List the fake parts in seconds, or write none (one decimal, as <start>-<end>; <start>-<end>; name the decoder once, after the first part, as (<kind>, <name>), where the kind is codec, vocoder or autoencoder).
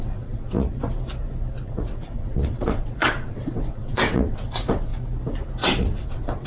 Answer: 0.0-0.8 (vocoder, WaveNeXt); 1.5-4.9; 5.6-6.5